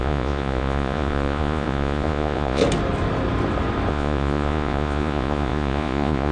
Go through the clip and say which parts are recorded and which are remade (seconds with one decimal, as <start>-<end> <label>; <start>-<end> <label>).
0.0-2.6 remade; 2.6-3.9 recorded; 3.9-6.3 remade